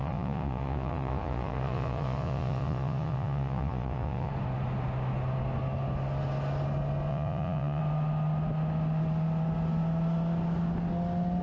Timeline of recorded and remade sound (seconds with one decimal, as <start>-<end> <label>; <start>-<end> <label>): 0.0-4.3 remade; 4.3-7.1 recorded; 7.1-7.8 remade; 7.8-11.4 recorded